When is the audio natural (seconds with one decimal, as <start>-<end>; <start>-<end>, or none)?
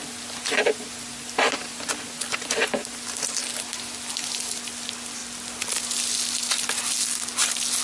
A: 0.0-7.8